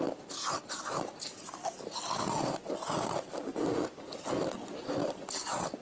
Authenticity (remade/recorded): recorded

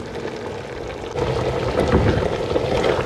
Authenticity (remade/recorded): recorded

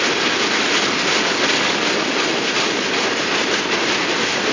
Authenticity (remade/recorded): recorded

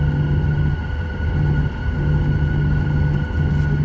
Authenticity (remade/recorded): recorded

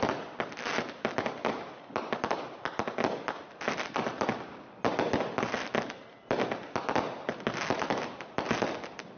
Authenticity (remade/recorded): recorded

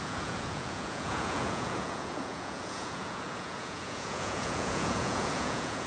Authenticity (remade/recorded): remade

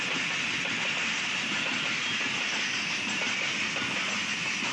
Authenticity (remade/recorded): recorded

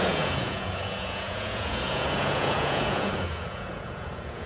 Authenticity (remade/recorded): remade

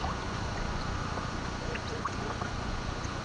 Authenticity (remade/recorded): remade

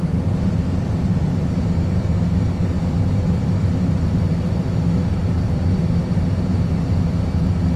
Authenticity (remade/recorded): recorded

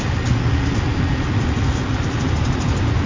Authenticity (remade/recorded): recorded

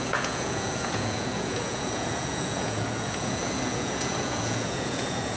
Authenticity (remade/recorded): remade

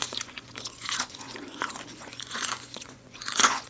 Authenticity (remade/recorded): remade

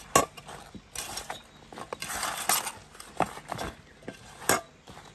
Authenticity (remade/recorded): recorded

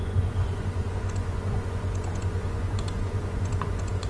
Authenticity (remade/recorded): remade